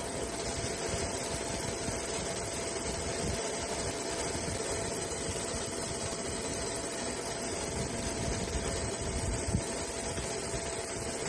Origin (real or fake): real